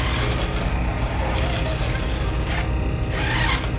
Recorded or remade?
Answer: recorded